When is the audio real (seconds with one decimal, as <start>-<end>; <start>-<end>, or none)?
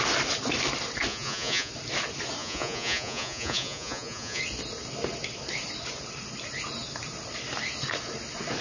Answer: 0.0-1.1; 1.7-2.4; 4.4-8.6